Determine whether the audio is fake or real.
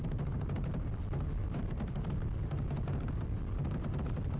real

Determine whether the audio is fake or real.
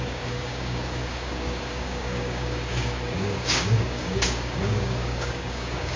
fake